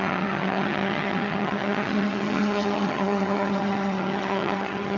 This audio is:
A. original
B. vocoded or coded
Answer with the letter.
B